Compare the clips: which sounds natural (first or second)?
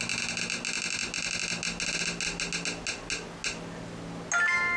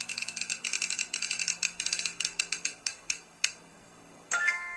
first